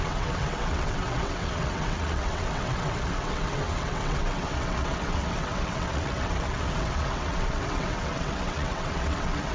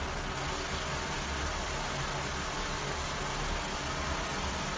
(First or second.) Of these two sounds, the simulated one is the first